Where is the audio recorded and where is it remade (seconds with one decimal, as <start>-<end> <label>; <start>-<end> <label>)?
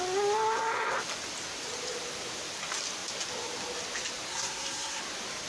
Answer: 0.0-4.3 recorded; 4.3-5.0 remade; 5.0-5.5 recorded